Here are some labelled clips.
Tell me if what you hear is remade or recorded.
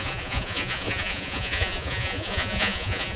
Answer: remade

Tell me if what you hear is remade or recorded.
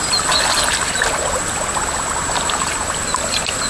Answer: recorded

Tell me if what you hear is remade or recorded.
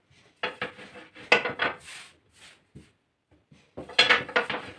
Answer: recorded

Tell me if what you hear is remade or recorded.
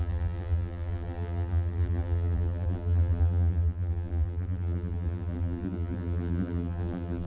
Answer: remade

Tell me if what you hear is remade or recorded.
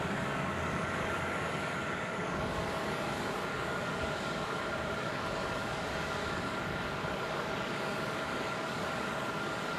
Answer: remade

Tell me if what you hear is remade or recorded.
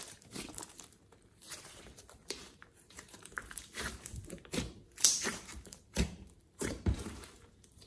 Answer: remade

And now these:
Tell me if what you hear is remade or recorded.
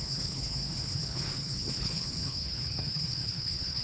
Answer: remade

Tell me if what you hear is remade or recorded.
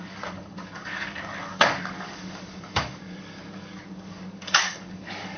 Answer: remade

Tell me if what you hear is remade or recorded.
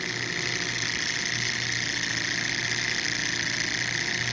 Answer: recorded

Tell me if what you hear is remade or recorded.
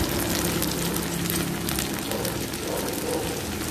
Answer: recorded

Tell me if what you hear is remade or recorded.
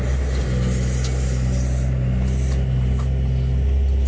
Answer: recorded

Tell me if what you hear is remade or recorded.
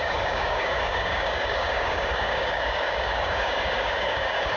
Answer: remade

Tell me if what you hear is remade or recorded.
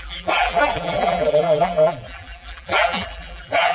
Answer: remade